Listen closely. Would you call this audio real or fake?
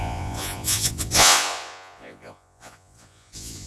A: fake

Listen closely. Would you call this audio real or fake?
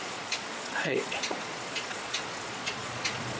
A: fake